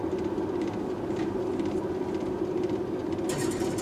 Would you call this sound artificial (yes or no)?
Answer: no